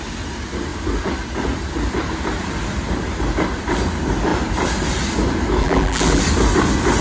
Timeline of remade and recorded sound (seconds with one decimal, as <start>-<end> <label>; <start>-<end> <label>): 0.0-5.6 recorded; 5.6-6.2 remade; 6.2-7.0 recorded